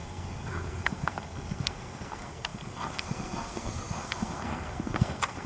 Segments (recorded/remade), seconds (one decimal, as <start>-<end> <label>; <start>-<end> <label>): 0.0-5.5 remade